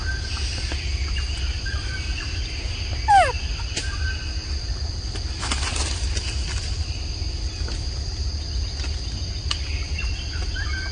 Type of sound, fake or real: real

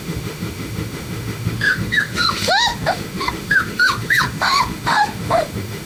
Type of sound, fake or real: fake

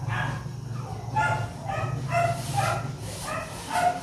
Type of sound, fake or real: real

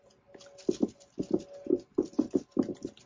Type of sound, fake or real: real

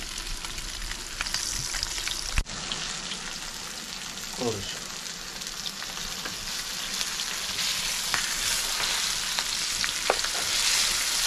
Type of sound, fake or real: real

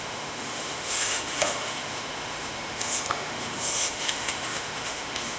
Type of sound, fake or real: fake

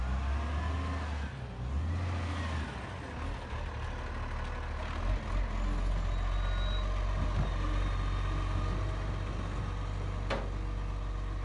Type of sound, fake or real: real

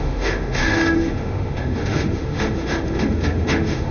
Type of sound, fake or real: fake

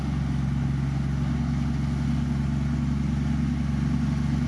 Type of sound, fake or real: real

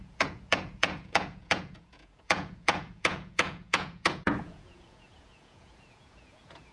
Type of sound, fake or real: fake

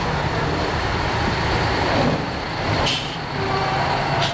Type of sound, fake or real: fake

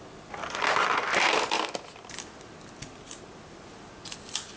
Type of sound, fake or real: real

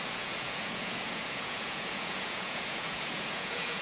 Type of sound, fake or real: fake